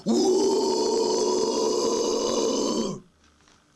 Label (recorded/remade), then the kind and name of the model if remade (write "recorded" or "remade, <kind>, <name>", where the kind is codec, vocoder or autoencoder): recorded